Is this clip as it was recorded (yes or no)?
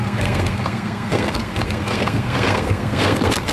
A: no